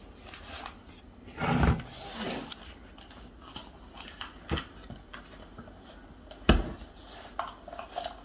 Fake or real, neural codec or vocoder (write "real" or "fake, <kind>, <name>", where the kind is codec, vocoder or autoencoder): real